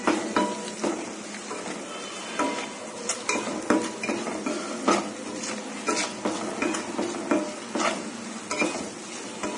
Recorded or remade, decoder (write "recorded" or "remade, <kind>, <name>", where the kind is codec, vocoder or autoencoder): recorded